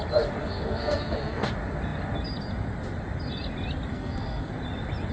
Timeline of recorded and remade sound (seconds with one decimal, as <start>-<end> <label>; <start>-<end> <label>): 0.0-0.4 recorded; 0.4-1.5 remade; 1.5-3.9 recorded; 3.9-4.5 remade; 4.5-5.1 recorded